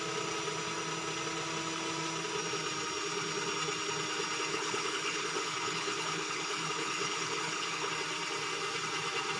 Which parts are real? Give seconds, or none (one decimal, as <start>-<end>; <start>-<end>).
0.0-4.5; 7.9-9.4